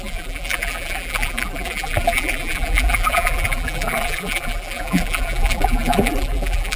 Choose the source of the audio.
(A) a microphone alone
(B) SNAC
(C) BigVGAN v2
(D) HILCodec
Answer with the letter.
C